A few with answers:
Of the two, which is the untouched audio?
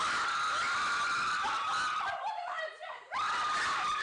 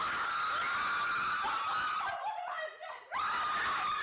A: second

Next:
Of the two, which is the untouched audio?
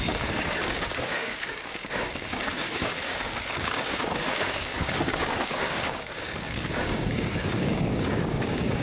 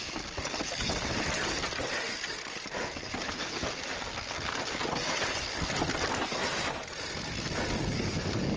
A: second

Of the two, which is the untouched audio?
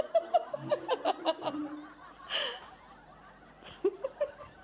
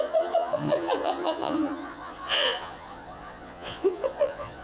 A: first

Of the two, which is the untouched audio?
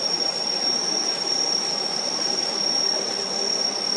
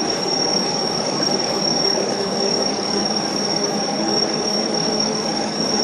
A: first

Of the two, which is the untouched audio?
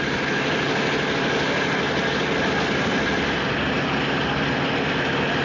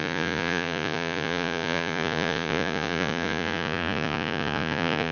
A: first